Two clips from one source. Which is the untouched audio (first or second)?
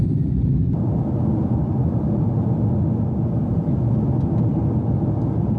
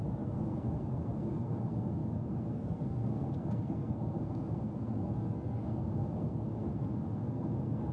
first